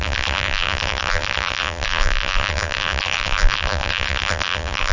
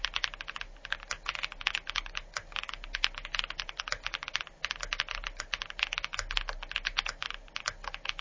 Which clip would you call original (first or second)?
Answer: second